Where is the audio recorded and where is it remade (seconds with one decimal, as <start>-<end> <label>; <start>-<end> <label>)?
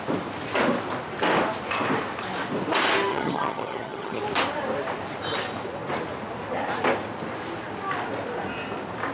0.0-3.1 recorded; 3.1-4.2 remade; 4.2-9.1 recorded